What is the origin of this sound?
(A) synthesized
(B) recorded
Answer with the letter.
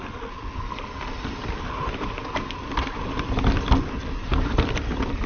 B